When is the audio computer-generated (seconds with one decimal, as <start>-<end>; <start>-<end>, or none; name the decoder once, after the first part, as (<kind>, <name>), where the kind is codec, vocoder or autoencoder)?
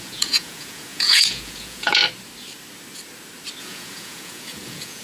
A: 0.0-2.0 (vocoder, Vocos); 3.6-5.0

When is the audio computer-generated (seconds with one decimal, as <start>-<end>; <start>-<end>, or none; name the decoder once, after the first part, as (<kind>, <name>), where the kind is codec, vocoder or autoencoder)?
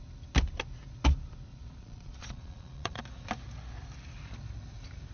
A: 1.5-3.0 (vocoder, Vocos)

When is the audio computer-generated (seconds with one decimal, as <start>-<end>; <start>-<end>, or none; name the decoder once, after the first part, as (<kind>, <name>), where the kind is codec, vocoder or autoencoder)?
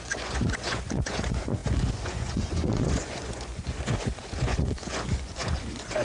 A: 0.0-6.0 (vocoder, Vocos)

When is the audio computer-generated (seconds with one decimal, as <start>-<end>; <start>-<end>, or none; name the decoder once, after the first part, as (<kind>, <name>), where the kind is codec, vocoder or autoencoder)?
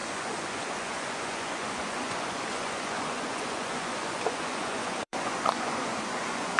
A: 0.0-6.6 (vocoder, Vocos)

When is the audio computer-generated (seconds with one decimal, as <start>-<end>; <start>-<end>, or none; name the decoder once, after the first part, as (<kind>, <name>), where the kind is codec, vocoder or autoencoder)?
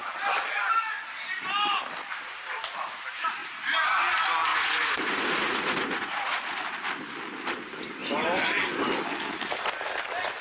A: 4.5-6.4 (vocoder, Vocos)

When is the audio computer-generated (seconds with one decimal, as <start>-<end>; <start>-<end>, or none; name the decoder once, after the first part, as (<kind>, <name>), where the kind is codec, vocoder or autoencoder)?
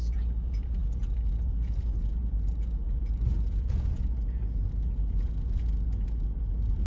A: 0.0-6.9 (vocoder, Vocos)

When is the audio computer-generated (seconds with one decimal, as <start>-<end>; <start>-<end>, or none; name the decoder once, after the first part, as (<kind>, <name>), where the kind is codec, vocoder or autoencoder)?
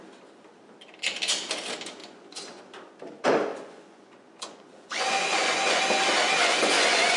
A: 2.0-2.6 (vocoder, Vocos); 3.5-5.8; 6.4-7.2